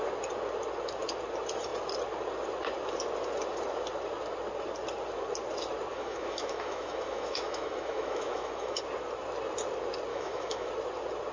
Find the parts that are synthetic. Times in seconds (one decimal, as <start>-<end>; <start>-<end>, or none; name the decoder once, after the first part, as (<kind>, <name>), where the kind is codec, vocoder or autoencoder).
5.9-8.8 (autoencoder, DAC-VAE); 10.1-10.7